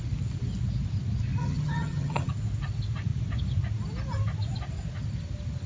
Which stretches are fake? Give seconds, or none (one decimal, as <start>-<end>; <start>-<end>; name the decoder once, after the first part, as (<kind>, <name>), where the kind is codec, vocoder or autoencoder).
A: 1.4-2.3 (vocoder, HiFi-GAN)